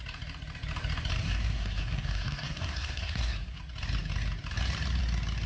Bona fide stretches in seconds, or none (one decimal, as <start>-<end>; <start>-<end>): 0.0-1.2; 3.6-5.5